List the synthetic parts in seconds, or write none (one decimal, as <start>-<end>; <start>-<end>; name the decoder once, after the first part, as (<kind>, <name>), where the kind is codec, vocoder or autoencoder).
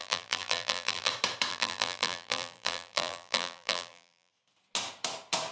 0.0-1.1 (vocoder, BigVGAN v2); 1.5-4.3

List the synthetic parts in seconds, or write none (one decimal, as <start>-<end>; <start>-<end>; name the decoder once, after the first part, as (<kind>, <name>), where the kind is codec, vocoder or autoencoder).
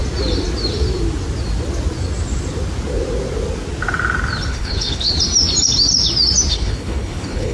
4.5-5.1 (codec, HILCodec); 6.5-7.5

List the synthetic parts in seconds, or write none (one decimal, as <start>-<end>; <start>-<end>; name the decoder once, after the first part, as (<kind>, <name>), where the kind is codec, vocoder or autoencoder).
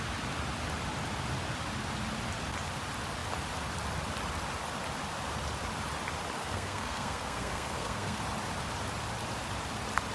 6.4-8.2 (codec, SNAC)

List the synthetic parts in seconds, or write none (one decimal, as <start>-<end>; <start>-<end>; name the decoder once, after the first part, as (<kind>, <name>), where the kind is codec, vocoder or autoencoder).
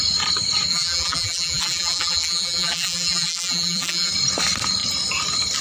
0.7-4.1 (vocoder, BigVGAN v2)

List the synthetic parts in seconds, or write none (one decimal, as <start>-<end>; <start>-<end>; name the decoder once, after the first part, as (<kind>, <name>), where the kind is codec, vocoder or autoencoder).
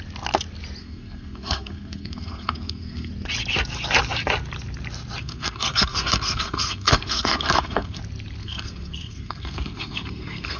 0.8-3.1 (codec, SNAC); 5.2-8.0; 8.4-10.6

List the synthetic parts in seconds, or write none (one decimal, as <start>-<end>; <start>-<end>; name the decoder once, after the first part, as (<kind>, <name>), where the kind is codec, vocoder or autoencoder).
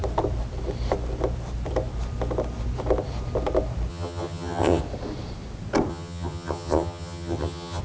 3.9-4.8 (vocoder, HiFi-GAN); 5.9-7.8